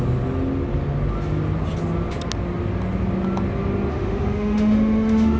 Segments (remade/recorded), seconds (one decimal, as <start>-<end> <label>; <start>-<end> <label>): 0.0-3.9 recorded; 3.9-5.4 remade